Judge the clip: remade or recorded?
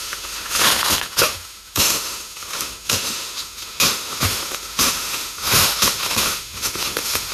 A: remade